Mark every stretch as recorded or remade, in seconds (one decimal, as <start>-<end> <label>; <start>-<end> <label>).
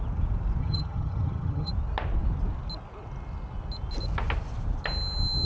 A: 0.0-0.6 recorded; 0.6-1.7 remade; 1.7-5.5 recorded